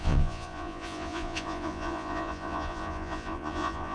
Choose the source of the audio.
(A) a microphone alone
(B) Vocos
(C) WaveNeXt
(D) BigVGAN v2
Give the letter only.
B